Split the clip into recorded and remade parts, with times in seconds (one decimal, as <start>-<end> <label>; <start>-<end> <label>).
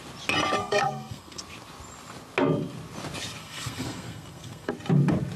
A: 0.0-0.6 recorded; 0.6-1.4 remade; 1.4-3.4 recorded; 3.4-4.7 remade; 4.7-5.4 recorded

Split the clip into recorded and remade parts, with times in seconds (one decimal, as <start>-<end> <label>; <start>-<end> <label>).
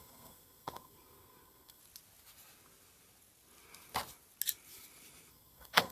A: 0.0-1.8 remade; 1.8-5.3 recorded; 5.3-5.9 remade